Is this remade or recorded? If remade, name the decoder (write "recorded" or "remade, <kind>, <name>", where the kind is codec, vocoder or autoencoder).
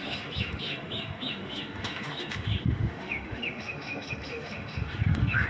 remade, autoencoder, DAC-VAE